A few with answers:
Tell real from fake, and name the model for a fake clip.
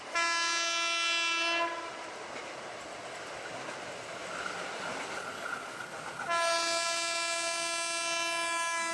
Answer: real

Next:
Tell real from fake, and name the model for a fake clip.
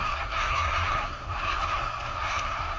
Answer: fake, codec, SNAC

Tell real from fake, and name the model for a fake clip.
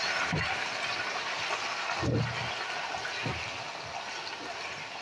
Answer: real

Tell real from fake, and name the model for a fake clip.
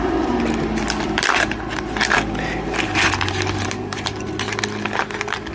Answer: fake, vocoder, BigVGAN v2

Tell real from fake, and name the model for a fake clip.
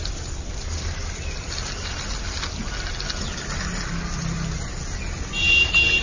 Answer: real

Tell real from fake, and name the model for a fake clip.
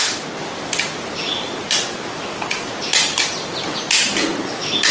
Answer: real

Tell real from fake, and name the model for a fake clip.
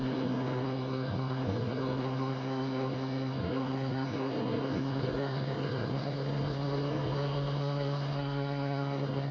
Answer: fake, codec, SNAC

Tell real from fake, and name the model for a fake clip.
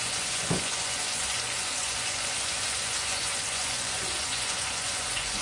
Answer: fake, vocoder, Vocos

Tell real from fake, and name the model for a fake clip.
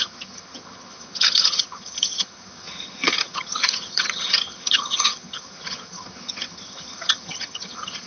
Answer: fake, vocoder, HiFi-GAN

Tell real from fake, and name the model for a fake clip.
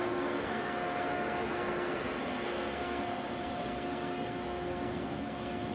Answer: fake, codec, SNAC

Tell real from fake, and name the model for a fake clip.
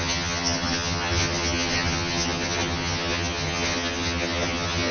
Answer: fake, vocoder, HiFi-GAN